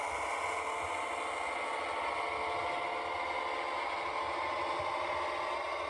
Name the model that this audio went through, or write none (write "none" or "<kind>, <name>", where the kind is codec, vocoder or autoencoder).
none